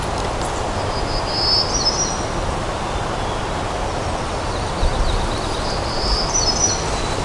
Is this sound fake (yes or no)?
no